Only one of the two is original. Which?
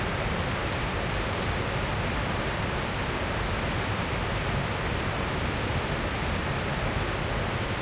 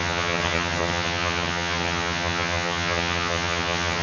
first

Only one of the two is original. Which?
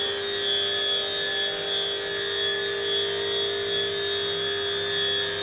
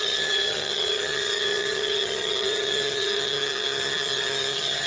first